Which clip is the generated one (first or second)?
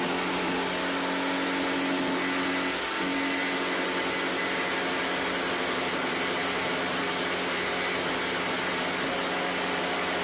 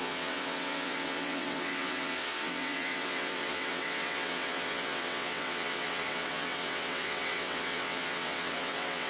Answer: second